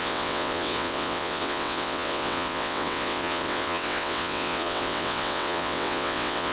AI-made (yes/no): yes